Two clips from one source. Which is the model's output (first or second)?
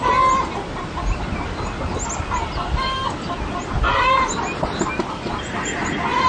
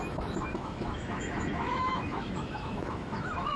second